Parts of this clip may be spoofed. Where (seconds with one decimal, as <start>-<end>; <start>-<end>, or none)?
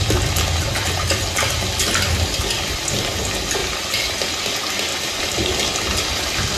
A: 3.6-4.3; 4.9-5.6